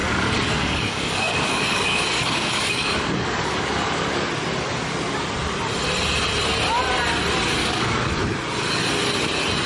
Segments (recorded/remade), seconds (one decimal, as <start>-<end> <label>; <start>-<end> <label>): 0.0-4.3 remade; 4.3-7.6 recorded; 7.6-8.2 remade; 8.2-9.7 recorded